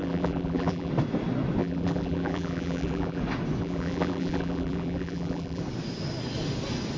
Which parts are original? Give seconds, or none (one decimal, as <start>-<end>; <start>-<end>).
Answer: 0.9-1.6; 3.2-3.6; 5.6-7.0